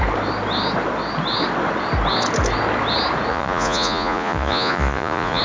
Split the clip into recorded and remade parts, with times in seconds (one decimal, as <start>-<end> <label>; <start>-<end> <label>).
0.0-3.3 recorded; 3.3-5.4 remade